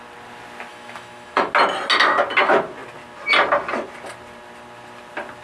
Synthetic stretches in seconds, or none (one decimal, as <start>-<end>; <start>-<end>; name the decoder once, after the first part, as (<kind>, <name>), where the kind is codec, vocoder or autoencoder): 0.7-1.5 (autoencoder, DAC-VAE)